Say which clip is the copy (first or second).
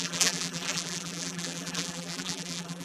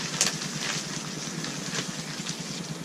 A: first